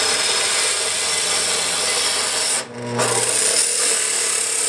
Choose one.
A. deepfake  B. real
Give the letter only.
B